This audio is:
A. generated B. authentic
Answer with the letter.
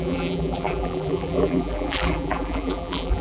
A